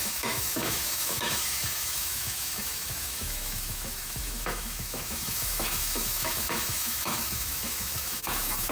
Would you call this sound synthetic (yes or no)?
yes